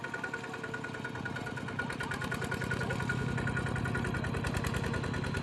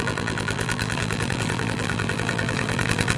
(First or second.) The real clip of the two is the first